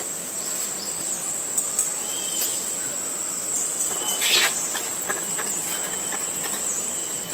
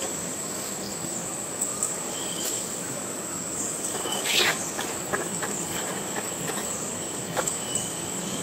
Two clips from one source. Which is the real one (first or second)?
first